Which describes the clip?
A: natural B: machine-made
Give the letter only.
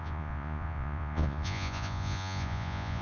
B